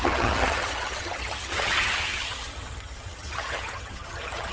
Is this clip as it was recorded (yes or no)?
no